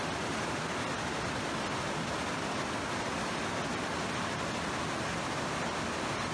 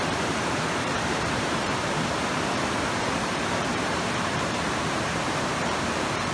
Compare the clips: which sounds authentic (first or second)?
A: first